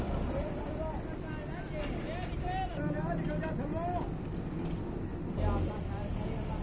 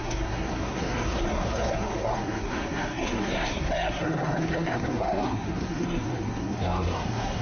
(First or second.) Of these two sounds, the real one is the first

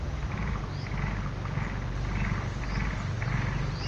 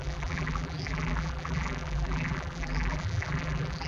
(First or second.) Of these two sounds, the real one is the first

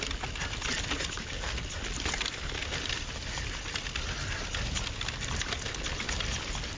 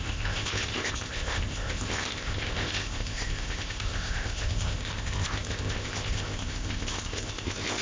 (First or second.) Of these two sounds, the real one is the first